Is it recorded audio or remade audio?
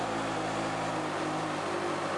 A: remade